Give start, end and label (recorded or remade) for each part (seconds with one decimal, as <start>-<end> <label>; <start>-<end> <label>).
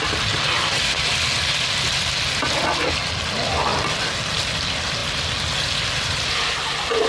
0.0-7.1 recorded